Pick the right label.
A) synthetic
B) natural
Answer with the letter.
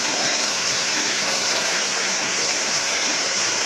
A